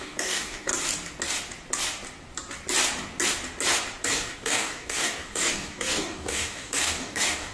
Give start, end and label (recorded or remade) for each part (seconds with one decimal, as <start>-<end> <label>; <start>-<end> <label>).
0.0-0.7 remade; 0.7-4.0 recorded; 4.0-7.5 remade